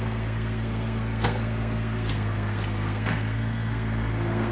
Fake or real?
fake